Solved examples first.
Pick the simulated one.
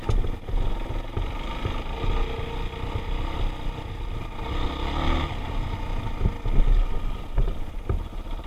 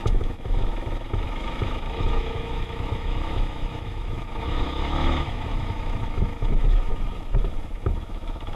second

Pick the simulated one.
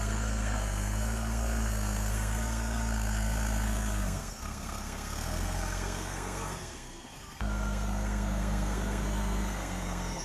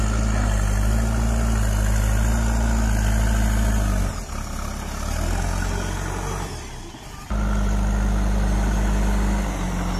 first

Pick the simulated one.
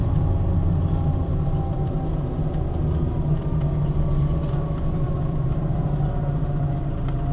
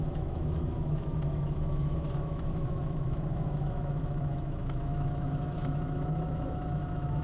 second